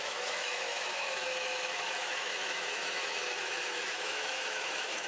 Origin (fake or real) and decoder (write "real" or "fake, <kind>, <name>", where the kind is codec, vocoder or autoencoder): fake, autoencoder, DAC-VAE